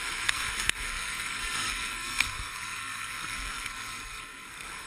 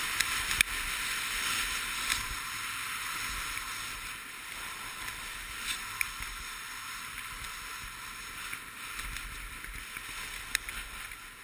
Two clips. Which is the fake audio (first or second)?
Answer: first